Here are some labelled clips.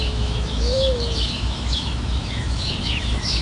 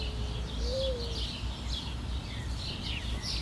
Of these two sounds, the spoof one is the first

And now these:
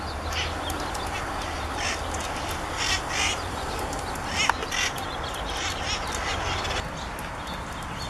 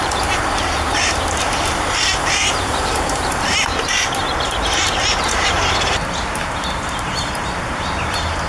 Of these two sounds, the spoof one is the second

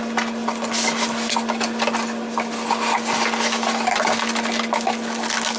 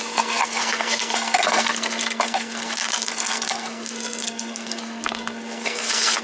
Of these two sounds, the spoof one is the second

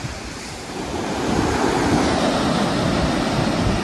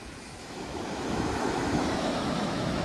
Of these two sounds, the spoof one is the second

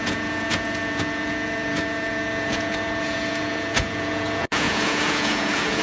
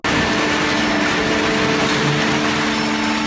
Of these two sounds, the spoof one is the first